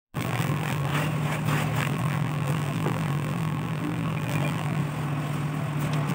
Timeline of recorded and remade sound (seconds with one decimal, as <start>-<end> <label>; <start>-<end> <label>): 0.0-0.9 remade; 0.9-1.8 recorded; 1.8-4.8 remade; 4.8-6.1 recorded